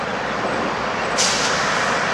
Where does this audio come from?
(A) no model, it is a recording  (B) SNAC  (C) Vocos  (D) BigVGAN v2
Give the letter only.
A